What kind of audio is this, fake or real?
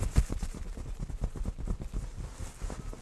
real